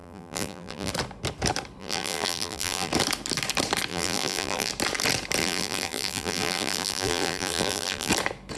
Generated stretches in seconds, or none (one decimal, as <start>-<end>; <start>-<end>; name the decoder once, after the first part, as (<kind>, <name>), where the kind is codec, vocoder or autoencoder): 0.0-0.9 (vocoder, BigVGAN v2); 1.8-2.9; 3.9-4.7; 5.4-8.1